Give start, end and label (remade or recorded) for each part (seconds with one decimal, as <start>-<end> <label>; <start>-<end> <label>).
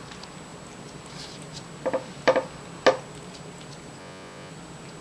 0.0-4.0 recorded; 4.0-4.5 remade; 4.5-5.0 recorded